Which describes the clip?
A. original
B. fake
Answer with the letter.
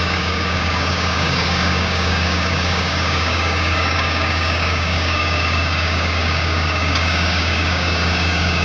B